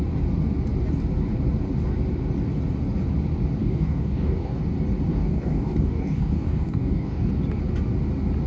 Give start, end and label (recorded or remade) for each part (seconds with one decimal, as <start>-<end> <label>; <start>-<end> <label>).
0.0-3.6 recorded; 3.6-4.6 remade; 4.6-5.1 recorded; 5.1-7.3 remade; 7.3-8.5 recorded